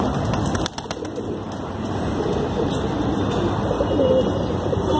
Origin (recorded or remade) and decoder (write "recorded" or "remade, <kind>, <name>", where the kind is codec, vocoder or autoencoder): recorded